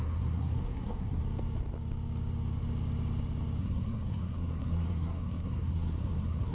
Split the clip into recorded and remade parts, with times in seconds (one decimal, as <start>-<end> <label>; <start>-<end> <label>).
0.0-1.2 remade; 1.2-3.6 recorded; 3.6-6.5 remade